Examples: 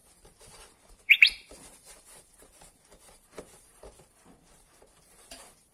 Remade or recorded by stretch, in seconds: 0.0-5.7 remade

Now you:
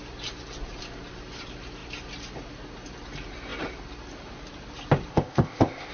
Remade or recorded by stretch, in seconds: 0.0-5.1 recorded; 5.1-5.9 remade

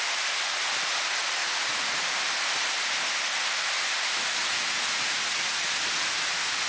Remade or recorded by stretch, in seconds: 0.0-1.4 recorded; 1.4-2.0 remade; 2.0-4.4 recorded; 4.4-5.7 remade; 5.7-6.7 recorded

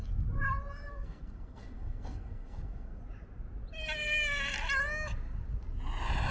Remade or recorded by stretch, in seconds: 0.0-0.9 recorded; 0.9-3.0 remade; 3.0-6.3 recorded

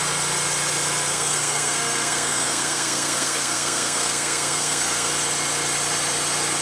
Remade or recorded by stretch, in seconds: 0.0-1.1 recorded; 1.1-5.1 remade; 5.1-6.6 recorded

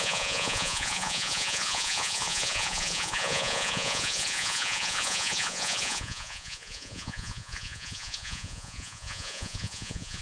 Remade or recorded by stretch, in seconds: 0.0-10.2 remade